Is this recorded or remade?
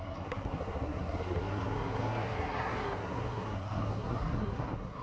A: remade